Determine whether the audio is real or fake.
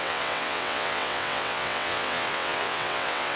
fake